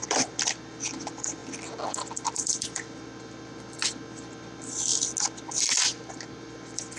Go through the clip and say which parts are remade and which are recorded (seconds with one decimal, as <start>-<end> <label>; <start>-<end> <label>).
0.0-4.9 remade; 4.9-6.4 recorded; 6.4-7.0 remade